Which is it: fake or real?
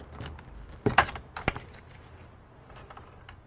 real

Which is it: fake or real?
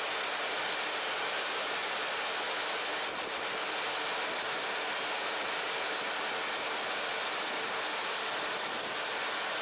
real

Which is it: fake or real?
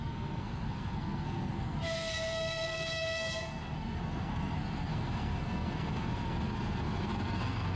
fake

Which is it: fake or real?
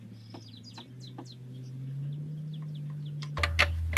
real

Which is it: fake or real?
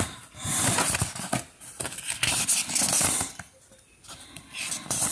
real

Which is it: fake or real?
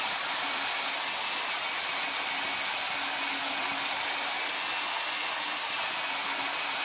real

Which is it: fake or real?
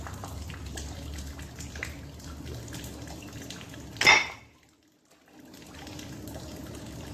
real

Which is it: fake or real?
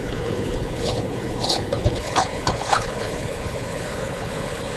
fake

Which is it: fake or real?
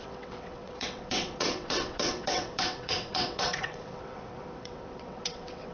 fake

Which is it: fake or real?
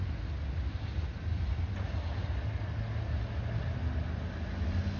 real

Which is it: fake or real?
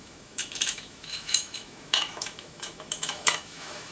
fake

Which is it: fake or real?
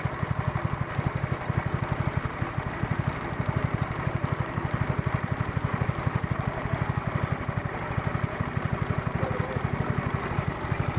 real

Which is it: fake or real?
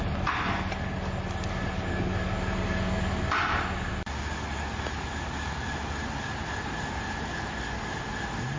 real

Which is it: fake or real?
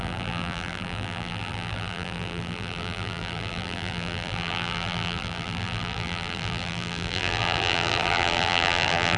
fake